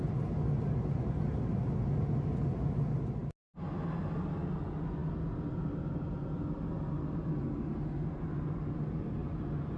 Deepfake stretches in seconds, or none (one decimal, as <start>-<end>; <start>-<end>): none